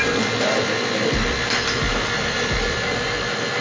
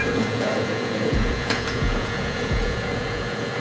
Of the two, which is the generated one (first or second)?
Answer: second